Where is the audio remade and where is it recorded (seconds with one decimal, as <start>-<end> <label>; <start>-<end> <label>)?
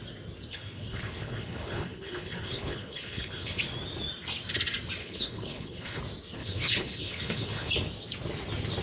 0.0-0.5 recorded; 0.5-3.6 remade; 3.6-5.0 recorded; 5.0-6.0 remade; 6.0-6.4 recorded; 6.4-7.7 remade; 7.7-8.8 recorded